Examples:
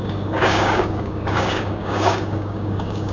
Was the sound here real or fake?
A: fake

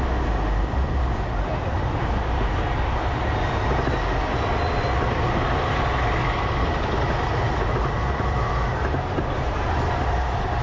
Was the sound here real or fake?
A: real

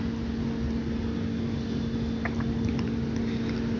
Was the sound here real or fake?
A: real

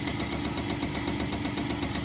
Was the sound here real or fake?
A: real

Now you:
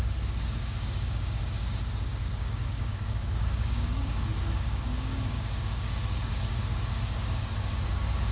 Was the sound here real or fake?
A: fake